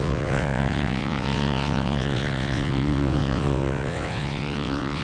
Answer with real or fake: fake